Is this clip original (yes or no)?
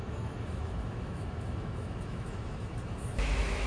no